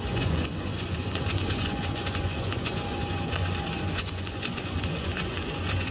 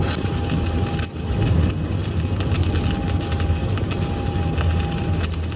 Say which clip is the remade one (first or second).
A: first